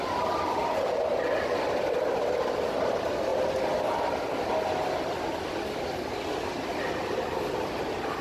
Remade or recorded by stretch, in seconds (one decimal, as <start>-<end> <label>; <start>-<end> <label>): 0.0-8.2 recorded